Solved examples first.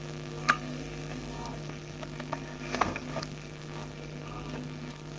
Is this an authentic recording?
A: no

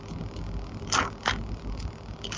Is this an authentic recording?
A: yes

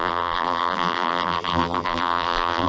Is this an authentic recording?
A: no